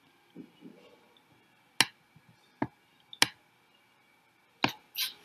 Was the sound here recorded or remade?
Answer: recorded